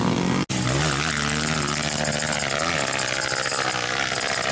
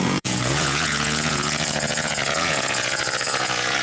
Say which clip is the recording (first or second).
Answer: first